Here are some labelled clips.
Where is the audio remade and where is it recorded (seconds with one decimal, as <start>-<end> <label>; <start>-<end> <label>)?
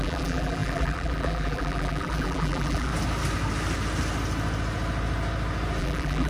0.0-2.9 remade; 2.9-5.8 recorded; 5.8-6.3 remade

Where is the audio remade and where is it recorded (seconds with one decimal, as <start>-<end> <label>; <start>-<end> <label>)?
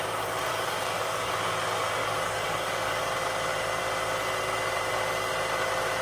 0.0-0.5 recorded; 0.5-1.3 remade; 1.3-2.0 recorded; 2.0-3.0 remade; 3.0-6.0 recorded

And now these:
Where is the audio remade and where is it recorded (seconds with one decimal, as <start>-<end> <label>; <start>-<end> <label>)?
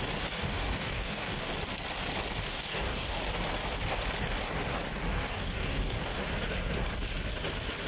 0.0-0.4 recorded; 0.4-1.5 remade; 1.5-2.4 recorded; 2.4-3.2 remade; 3.2-5.1 recorded; 5.1-6.2 remade; 6.2-7.9 recorded